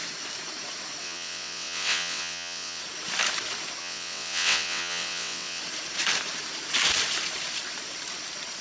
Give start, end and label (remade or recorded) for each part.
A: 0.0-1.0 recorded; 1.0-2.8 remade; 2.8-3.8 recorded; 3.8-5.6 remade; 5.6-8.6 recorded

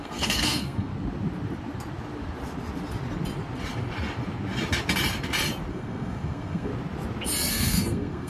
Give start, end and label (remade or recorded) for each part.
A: 0.0-0.9 remade; 0.9-5.7 recorded; 5.7-6.7 remade; 6.7-7.5 recorded; 7.5-8.3 remade

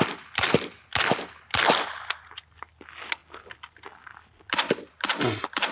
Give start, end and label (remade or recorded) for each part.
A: 0.0-5.7 recorded

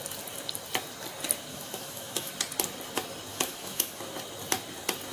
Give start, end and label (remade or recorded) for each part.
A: 0.0-1.5 recorded; 1.5-2.3 remade; 2.3-3.3 recorded; 3.3-4.0 remade; 4.0-5.1 recorded

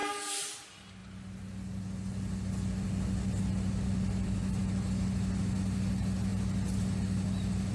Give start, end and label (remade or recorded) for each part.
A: 0.0-7.7 recorded

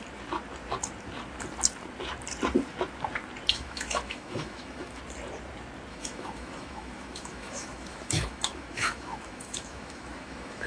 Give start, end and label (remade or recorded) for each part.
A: 0.0-3.5 recorded; 3.5-5.0 remade; 5.0-5.9 recorded; 5.9-10.7 remade

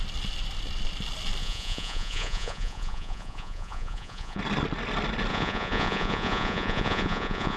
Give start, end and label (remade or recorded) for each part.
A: 0.0-1.4 recorded; 1.4-4.4 remade; 4.4-5.3 recorded; 5.3-7.6 remade